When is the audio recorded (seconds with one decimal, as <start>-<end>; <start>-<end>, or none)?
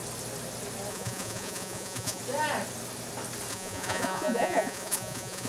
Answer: 0.0-0.9; 2.2-3.5